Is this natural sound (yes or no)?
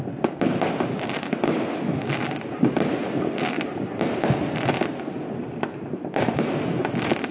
yes